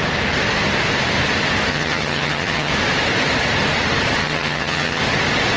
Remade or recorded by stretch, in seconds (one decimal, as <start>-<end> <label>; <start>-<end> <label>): 0.0-1.7 recorded; 1.7-2.7 remade; 2.7-4.2 recorded; 4.2-5.0 remade; 5.0-5.6 recorded